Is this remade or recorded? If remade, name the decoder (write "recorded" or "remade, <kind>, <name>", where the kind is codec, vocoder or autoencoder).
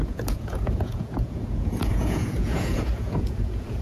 remade, vocoder, Vocos